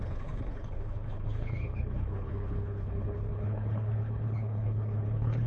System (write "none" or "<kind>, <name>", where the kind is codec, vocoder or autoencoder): codec, HILCodec